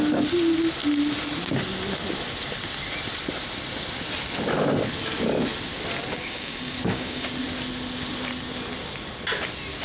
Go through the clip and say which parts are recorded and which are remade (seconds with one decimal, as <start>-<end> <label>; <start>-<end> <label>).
0.0-6.1 recorded; 6.1-7.3 remade; 7.3-9.8 recorded